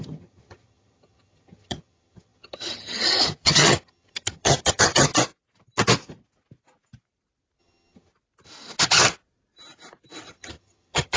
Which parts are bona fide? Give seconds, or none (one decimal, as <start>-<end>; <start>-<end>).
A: 5.1-7.6; 8.1-10.3